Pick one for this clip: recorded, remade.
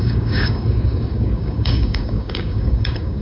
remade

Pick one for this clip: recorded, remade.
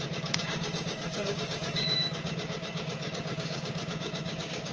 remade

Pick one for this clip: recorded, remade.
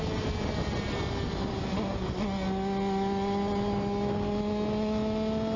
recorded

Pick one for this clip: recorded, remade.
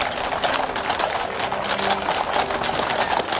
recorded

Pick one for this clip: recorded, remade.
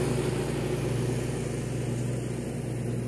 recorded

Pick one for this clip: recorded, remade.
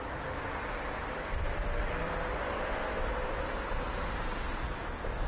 recorded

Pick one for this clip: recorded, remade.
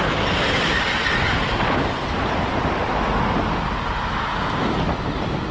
recorded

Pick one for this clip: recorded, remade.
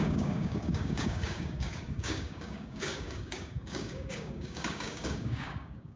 remade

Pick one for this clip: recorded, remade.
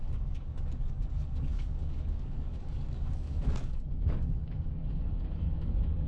remade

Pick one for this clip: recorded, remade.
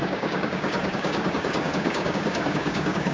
remade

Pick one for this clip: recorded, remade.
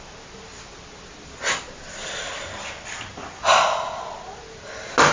recorded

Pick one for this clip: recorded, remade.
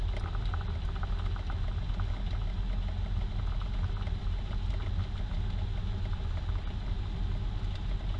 recorded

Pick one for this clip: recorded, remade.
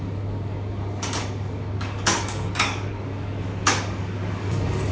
remade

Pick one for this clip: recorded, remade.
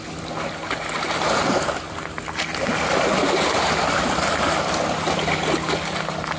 recorded